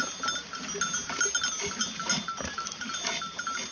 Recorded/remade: recorded